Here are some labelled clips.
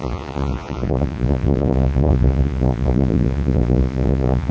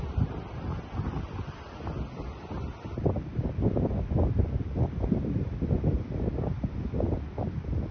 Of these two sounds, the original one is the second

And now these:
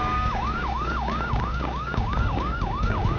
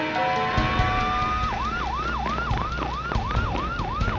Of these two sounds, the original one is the second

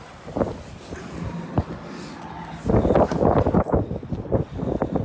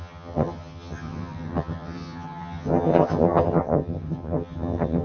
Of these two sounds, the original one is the first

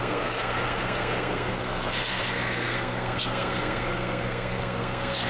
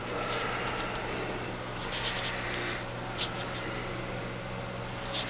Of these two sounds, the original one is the second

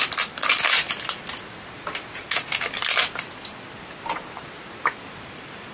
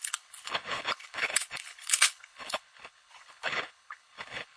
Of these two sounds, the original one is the first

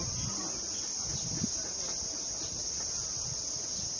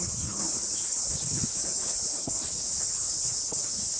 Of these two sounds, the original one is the first